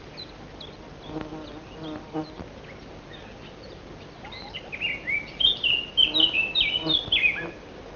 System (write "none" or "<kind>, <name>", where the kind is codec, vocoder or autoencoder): none